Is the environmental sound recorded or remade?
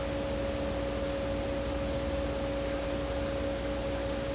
recorded